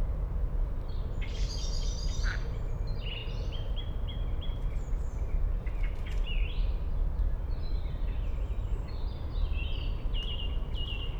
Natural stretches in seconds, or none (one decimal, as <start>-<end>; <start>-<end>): 0.0-3.2; 5.6-11.2